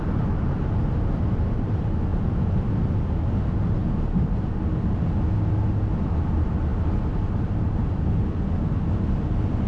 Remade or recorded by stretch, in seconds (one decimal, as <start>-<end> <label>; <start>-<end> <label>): 0.0-9.7 recorded

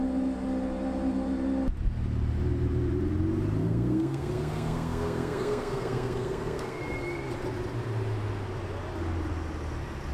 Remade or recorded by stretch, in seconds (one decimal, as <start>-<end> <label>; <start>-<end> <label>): 0.0-3.6 recorded; 3.6-6.8 remade; 6.8-10.1 recorded

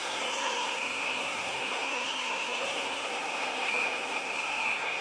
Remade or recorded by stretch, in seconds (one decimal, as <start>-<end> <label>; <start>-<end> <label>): 0.0-5.0 remade